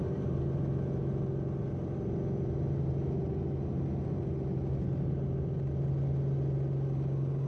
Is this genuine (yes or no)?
yes